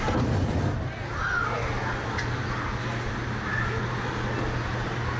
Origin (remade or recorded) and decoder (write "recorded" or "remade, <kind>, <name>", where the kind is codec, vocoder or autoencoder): recorded